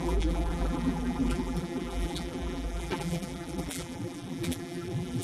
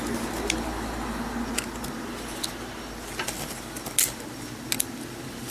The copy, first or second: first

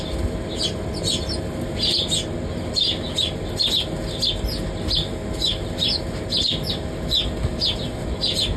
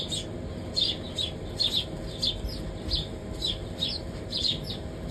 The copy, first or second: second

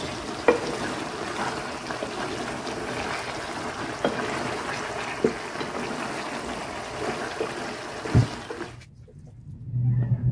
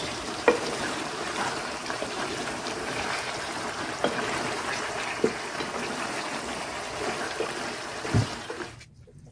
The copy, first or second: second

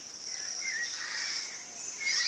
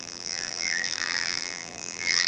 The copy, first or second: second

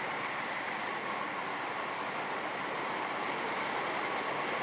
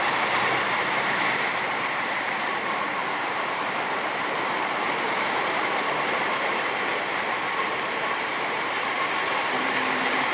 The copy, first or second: second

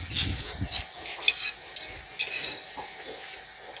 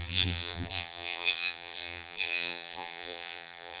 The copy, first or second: second